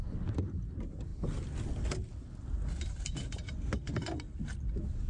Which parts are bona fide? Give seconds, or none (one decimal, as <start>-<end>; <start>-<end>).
0.0-5.1